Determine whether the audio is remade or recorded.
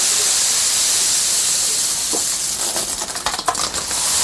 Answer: recorded